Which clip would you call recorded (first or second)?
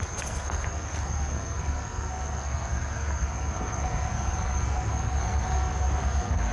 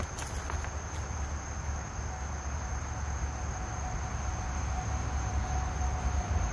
second